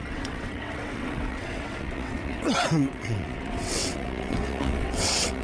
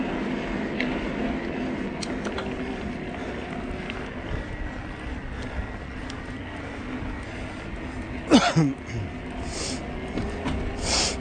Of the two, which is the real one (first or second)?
second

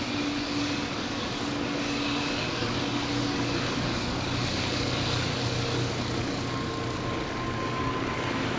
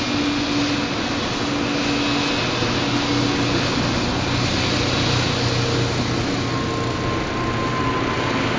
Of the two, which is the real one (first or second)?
second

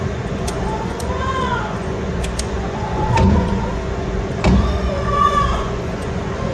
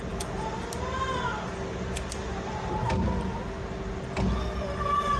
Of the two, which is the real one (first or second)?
second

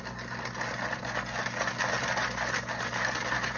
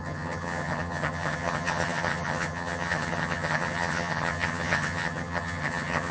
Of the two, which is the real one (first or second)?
first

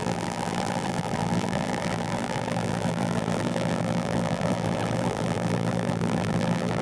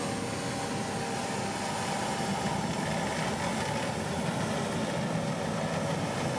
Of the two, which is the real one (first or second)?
second